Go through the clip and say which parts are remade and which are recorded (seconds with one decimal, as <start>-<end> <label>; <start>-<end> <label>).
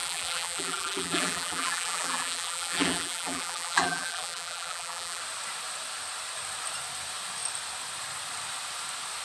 0.0-5.2 remade; 5.2-9.2 recorded